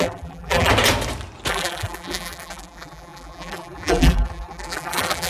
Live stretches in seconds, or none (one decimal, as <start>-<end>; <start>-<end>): 0.7-1.5